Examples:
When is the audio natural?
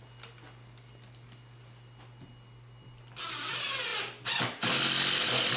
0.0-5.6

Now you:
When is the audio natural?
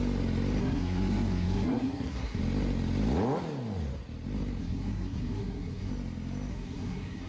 0.0-0.6; 2.4-4.6; 5.9-6.5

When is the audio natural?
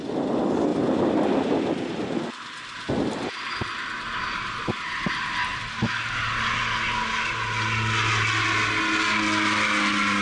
0.0-10.2